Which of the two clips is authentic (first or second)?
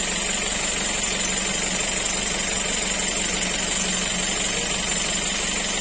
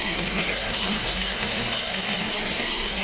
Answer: first